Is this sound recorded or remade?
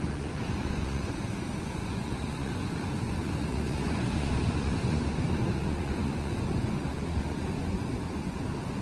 remade